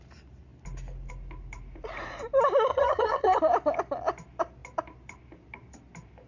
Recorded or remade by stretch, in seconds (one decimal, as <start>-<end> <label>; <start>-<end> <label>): 0.0-2.7 recorded; 2.7-3.4 remade; 3.4-6.3 recorded